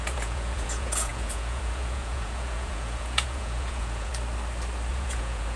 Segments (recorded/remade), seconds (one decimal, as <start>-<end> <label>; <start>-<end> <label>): 0.0-4.1 remade; 4.1-4.9 recorded; 4.9-5.6 remade